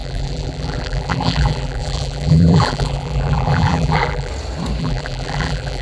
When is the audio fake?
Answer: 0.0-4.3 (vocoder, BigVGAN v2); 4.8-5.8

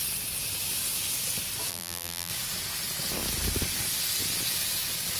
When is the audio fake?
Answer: 1.7-2.3 (vocoder, BigVGAN v2)

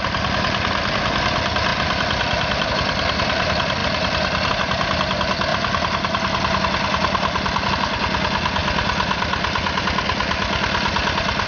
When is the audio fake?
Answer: 1.7-2.7 (vocoder, BigVGAN v2); 3.8-4.5; 5.5-7.7

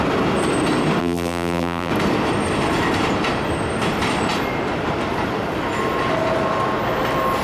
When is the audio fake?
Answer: 1.0-1.9 (vocoder, BigVGAN v2)

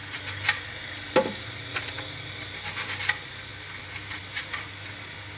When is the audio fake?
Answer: 3.5-4.2 (vocoder, BigVGAN v2)